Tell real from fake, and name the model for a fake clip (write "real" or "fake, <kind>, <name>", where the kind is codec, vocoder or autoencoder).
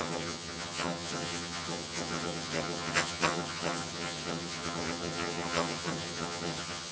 fake, vocoder, HiFi-GAN